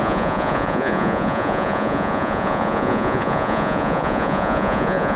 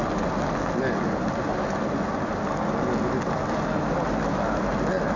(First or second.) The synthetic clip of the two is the first